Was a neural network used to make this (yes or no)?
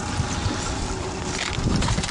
no